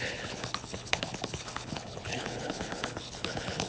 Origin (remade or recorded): remade